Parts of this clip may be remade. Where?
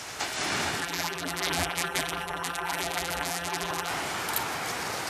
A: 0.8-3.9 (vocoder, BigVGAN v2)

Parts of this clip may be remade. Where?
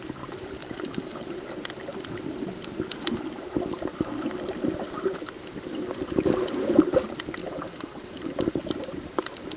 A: 0.6-1.4 (vocoder, BigVGAN v2); 7.4-8.6